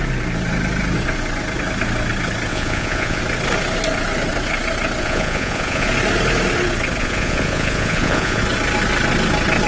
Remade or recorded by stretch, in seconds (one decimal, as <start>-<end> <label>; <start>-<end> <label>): 0.0-2.5 recorded; 2.5-3.2 remade; 3.2-5.0 recorded; 5.0-5.9 remade; 5.9-7.0 recorded; 7.0-8.4 remade; 8.4-9.7 recorded